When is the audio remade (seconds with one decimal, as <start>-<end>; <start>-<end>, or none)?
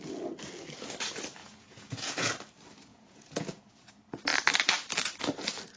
1.4-2.3; 2.9-3.7